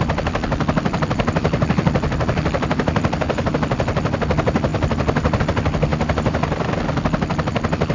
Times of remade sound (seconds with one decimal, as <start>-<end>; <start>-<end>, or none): 0.0-3.5